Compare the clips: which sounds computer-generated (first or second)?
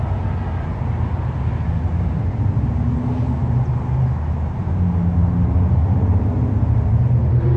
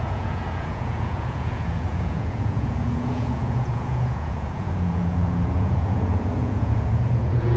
second